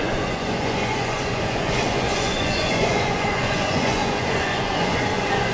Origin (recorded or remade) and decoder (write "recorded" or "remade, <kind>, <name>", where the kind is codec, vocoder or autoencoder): remade, vocoder, Vocos